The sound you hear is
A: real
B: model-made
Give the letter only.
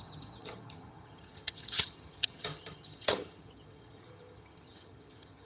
B